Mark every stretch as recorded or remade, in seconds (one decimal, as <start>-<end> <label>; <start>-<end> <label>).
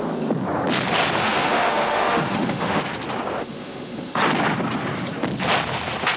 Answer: 0.0-1.2 recorded; 1.2-2.8 remade; 2.8-3.4 recorded; 3.4-4.2 remade; 4.2-6.2 recorded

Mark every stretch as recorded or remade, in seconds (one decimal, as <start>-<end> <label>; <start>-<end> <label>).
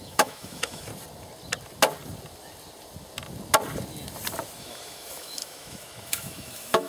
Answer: 0.0-0.9 remade; 0.9-4.6 recorded; 4.6-6.9 remade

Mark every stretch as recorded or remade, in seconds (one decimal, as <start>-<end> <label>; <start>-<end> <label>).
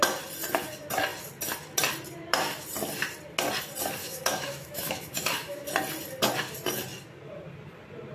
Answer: 0.0-4.0 recorded; 4.0-5.7 remade; 5.7-8.1 recorded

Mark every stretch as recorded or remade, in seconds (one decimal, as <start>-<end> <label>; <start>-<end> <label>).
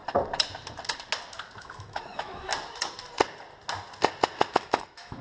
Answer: 0.0-1.6 recorded; 1.6-2.5 remade; 2.5-4.5 recorded; 4.5-5.2 remade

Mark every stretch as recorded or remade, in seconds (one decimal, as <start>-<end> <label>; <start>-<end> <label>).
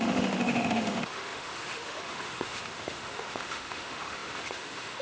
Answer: 0.0-5.0 remade